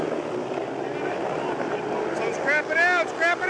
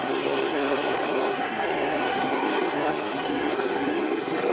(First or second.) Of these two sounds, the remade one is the second